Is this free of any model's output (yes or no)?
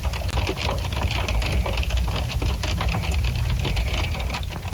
yes